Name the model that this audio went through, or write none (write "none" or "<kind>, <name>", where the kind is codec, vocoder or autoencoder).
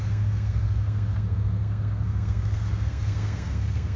codec, SNAC